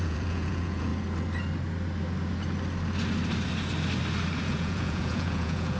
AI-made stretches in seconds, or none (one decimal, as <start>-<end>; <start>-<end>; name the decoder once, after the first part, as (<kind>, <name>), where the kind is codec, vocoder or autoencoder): 0.0-0.9 (vocoder, Vocos); 4.4-5.8